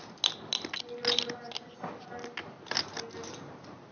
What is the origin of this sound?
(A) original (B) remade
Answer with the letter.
A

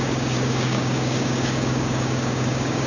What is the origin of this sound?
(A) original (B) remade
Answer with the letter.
B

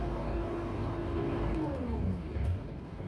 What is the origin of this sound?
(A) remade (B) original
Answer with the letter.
A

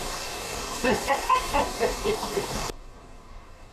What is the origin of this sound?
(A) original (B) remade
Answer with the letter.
B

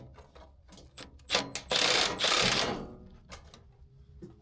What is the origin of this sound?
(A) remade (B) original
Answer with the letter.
B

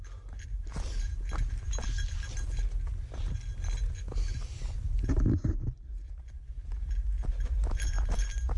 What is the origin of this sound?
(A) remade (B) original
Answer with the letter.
B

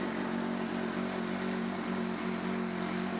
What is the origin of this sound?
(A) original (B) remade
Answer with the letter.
A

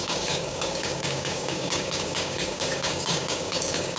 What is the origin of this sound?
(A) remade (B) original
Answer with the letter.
A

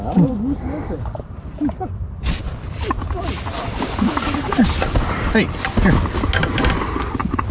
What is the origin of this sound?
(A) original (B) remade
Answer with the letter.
A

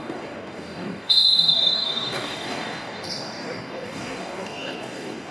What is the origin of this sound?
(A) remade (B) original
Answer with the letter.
A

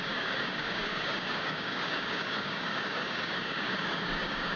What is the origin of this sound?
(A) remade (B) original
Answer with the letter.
A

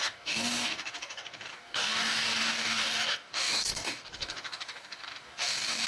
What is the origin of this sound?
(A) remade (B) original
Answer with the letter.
A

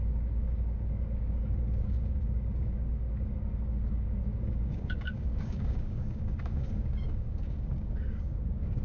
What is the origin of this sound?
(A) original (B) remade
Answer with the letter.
B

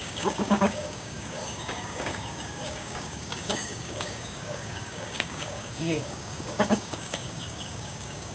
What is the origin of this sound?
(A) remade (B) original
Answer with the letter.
A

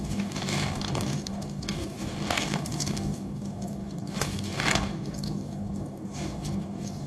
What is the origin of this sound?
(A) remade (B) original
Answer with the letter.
A